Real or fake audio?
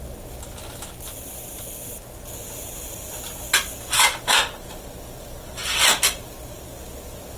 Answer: real